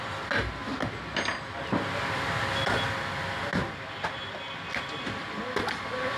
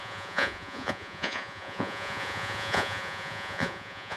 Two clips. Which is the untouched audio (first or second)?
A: first